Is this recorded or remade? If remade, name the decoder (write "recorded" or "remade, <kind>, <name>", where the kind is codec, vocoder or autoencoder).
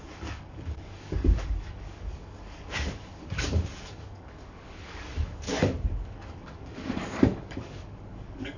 remade, codec, DAC